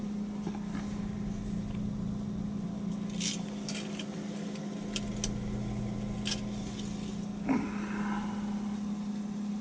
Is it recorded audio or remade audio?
recorded